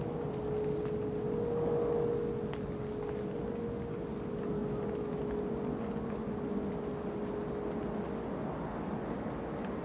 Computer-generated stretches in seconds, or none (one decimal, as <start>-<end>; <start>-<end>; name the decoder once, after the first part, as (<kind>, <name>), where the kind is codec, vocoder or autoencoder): none

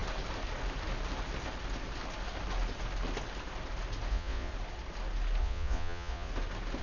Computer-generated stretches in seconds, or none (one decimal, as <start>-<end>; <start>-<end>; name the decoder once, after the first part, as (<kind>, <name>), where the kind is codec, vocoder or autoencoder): 4.1-4.5 (vocoder, Vocos); 5.4-6.3

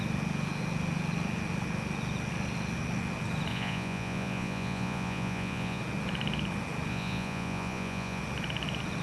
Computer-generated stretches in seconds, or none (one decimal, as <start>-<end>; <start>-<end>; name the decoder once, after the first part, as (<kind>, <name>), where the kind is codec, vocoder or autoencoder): 3.5-5.8 (vocoder, Vocos); 6.9-8.2

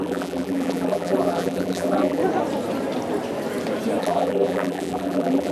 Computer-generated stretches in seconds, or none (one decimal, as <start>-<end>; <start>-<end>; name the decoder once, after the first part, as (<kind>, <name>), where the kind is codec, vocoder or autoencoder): 0.0-2.2 (vocoder, BigVGAN v2); 4.0-5.5